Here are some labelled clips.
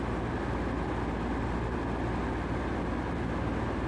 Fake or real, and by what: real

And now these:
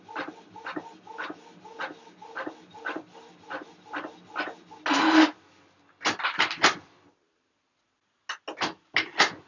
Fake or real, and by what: real